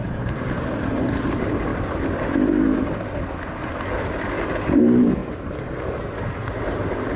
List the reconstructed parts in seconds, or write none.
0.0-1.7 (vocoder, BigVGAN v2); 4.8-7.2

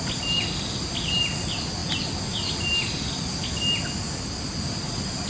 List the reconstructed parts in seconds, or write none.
none